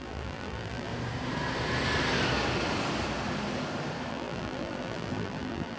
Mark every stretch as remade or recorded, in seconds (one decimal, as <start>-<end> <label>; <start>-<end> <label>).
0.0-0.9 remade; 0.9-4.1 recorded; 4.1-5.8 remade